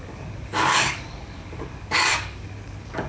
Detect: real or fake fake